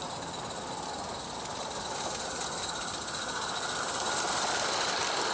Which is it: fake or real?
real